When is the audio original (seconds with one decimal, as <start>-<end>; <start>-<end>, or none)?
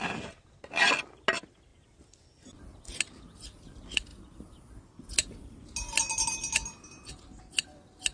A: 0.0-8.1